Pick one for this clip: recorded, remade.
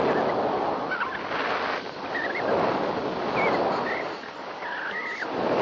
recorded